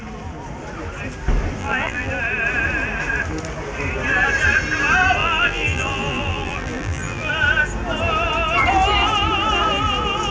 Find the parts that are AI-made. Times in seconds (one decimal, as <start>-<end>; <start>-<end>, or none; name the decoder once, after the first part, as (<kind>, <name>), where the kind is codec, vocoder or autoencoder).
1.6-2.1 (vocoder, BigVGAN v2); 5.2-7.3